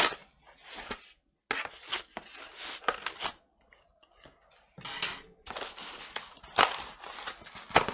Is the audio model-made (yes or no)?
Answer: no